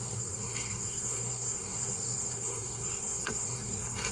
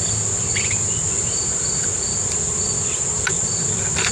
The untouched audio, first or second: second